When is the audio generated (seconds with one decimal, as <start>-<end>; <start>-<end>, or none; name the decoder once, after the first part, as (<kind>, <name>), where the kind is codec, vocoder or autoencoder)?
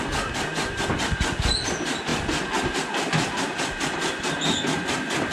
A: none